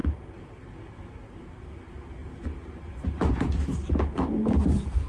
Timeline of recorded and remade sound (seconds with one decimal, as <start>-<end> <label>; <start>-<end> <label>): 0.0-5.1 recorded